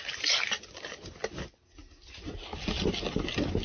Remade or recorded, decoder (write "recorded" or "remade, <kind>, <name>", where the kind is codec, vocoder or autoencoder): recorded